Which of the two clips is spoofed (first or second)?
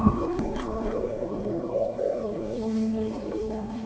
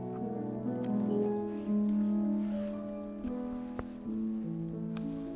first